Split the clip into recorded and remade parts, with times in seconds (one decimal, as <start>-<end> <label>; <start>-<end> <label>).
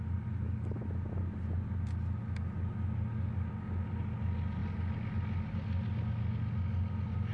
0.0-7.3 recorded